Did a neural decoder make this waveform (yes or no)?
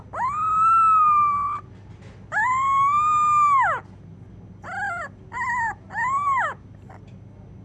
no